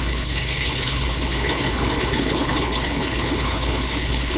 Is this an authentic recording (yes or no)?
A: no